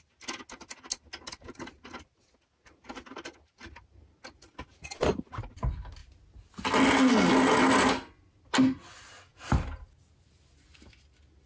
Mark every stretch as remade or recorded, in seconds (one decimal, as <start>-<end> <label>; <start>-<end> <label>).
0.0-11.5 recorded